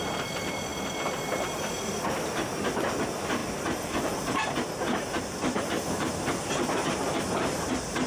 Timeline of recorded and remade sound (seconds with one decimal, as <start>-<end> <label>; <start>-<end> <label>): 0.0-3.4 remade; 3.4-5.2 recorded; 5.2-8.1 remade